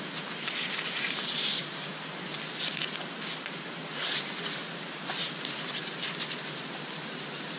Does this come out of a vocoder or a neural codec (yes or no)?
no